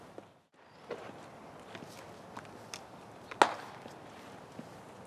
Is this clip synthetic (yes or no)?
no